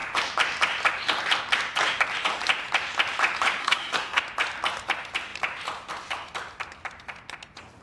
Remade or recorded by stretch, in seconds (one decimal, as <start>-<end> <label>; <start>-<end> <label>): 0.0-3.6 recorded; 3.6-4.2 remade; 4.2-7.8 recorded